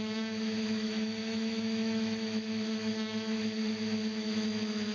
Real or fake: fake